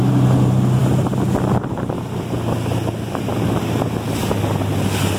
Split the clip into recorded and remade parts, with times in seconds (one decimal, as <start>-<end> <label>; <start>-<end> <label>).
0.0-5.2 recorded